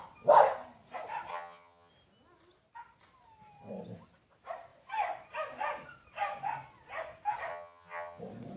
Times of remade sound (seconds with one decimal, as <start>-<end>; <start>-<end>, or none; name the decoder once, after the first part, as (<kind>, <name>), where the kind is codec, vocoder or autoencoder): 1.3-1.9 (vocoder, HiFi-GAN); 7.5-8.2